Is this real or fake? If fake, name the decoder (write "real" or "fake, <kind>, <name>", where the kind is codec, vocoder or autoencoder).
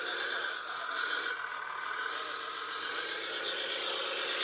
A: real